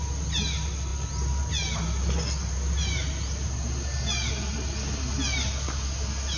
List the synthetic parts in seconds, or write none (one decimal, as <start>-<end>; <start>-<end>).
none